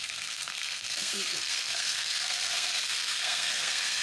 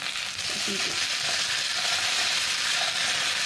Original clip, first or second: second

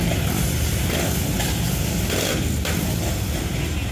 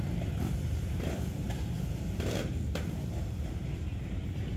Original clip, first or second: first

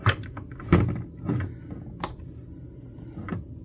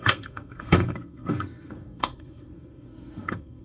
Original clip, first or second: first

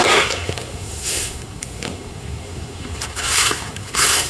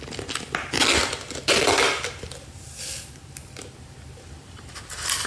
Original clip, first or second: second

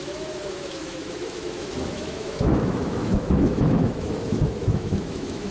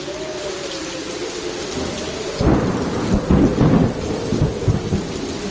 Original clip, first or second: second